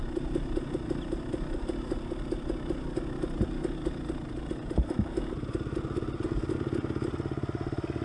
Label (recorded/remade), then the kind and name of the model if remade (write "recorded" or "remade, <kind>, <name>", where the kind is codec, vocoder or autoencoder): recorded